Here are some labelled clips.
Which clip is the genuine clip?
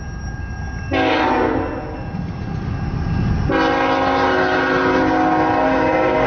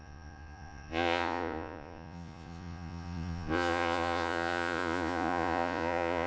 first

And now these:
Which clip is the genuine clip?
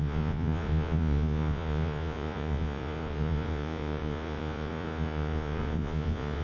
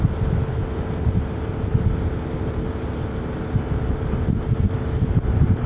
second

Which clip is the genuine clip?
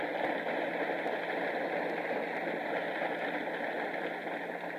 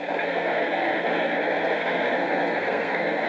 first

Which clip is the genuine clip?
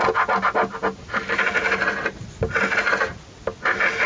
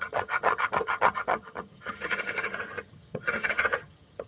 first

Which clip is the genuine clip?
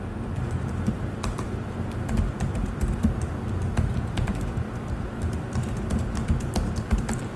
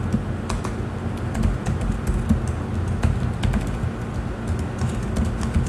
second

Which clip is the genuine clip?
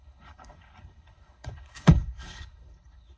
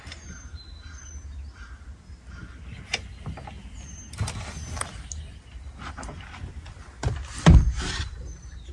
second